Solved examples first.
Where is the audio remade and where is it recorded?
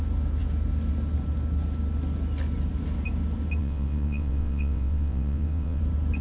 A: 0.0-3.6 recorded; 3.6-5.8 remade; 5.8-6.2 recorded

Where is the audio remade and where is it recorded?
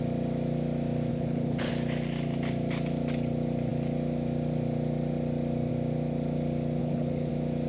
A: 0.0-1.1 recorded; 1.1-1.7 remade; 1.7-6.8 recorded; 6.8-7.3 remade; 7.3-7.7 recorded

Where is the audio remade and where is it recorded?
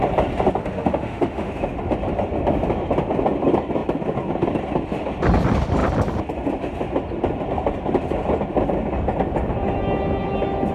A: 0.0-0.6 recorded; 0.6-1.5 remade; 1.5-10.7 recorded